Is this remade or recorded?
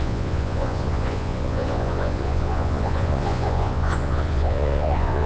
remade